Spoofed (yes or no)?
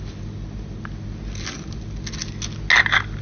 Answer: no